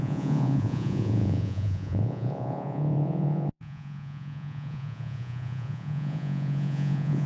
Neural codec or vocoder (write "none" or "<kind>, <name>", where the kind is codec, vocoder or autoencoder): vocoder, Vocos